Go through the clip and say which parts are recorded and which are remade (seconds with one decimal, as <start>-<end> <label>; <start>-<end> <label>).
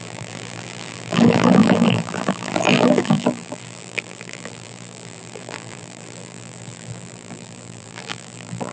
0.0-8.7 remade